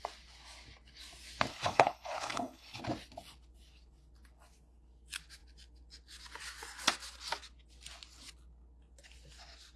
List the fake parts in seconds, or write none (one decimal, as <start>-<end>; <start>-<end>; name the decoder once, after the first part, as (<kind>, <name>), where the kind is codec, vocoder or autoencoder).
1.5-2.8 (codec, HILCodec)